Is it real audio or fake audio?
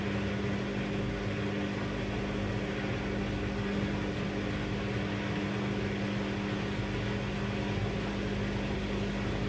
real